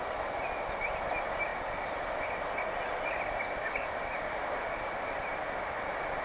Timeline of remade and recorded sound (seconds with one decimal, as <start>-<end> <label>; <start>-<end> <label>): 0.0-6.2 recorded